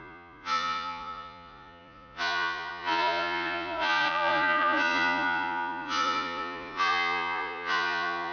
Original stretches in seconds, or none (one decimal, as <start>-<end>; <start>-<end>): none